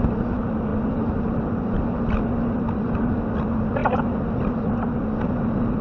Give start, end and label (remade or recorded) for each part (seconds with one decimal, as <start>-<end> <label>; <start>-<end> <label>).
0.0-5.8 recorded